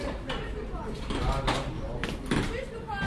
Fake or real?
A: real